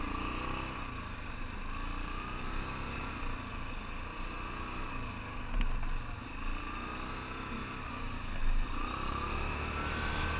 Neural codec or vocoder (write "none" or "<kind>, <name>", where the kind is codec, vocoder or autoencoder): none